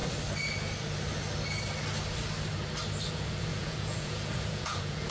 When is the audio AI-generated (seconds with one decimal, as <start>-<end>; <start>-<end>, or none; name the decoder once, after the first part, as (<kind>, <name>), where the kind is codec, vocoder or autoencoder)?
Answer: 3.1-5.1 (vocoder, Vocos)